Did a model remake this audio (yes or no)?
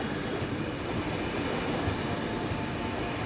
no